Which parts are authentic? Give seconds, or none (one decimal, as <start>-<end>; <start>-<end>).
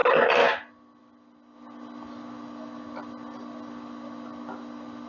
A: 0.0-5.1